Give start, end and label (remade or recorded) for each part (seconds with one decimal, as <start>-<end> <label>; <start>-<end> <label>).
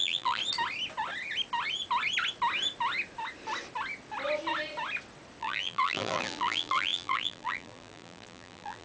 0.0-0.4 remade; 0.4-5.4 recorded; 5.4-8.8 remade